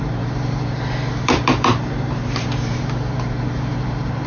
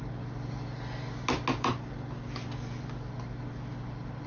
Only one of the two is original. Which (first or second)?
second